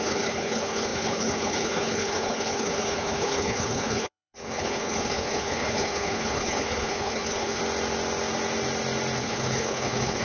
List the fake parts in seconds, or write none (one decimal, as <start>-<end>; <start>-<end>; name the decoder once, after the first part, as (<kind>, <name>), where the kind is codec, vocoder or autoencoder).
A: 0.0-7.6 (codec, HILCodec); 9.2-10.2